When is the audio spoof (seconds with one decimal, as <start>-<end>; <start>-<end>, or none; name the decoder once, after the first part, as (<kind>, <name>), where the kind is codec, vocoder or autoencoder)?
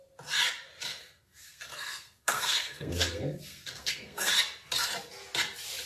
0.8-4.3 (codec, SNAC)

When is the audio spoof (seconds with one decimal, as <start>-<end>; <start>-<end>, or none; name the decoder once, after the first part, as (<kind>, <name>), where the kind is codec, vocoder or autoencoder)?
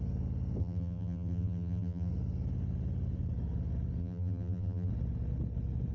0.6-2.1 (vocoder, BigVGAN v2); 4.0-4.9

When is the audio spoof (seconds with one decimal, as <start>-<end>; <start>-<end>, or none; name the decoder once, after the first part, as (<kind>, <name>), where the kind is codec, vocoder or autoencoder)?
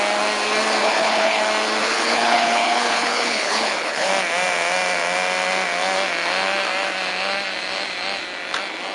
0.8-1.4 (codec, HILCodec); 1.8-4.1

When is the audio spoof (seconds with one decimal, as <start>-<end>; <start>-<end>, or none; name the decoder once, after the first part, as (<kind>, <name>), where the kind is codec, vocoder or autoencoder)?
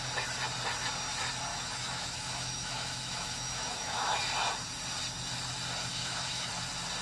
1.5-4.2 (autoencoder, DAC-VAE); 5.9-6.5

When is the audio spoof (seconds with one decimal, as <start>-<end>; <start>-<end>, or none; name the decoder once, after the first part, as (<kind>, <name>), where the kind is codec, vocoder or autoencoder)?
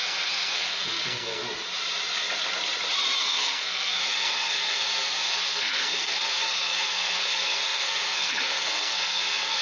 0.0-1.4 (codec, SNAC); 3.2-9.6